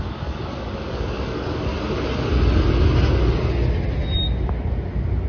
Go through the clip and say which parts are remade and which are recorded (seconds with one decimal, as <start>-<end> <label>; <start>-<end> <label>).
0.0-1.7 remade; 1.7-5.3 recorded